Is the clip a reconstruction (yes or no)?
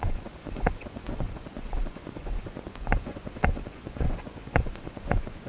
yes